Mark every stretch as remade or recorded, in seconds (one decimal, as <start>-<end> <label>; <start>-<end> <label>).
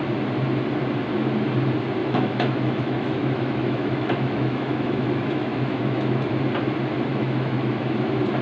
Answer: 0.0-2.0 recorded; 2.0-6.4 remade; 6.4-7.1 recorded; 7.1-7.8 remade; 7.8-8.4 recorded